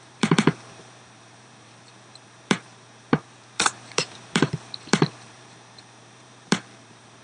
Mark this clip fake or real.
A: fake